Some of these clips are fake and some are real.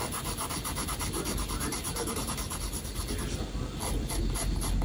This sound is real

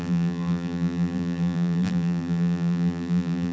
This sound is fake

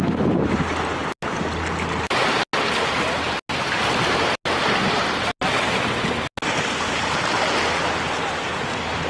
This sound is real